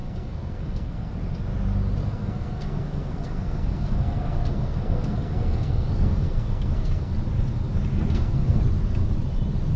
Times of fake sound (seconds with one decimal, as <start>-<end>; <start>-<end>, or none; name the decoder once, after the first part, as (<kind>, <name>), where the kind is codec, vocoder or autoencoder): 0.0-1.1 (codec, SNAC); 2.0-7.1; 7.9-8.6